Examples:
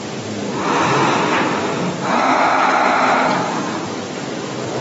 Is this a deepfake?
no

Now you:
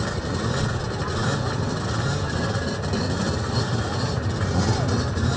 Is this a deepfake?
no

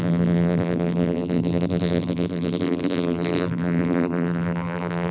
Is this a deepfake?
yes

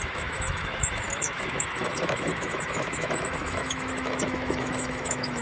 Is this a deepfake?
yes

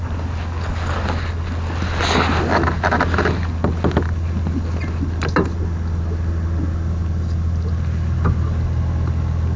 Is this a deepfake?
no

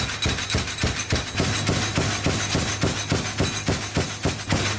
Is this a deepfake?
no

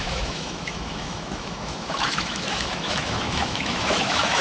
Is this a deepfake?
yes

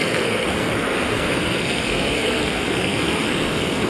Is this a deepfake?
yes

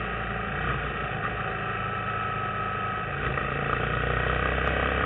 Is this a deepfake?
no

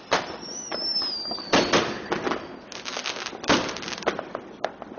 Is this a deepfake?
no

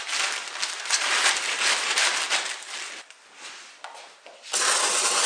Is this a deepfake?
no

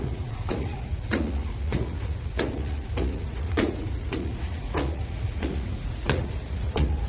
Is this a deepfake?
yes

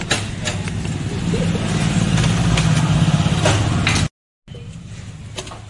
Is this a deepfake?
no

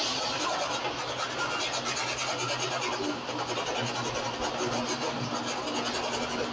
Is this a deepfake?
no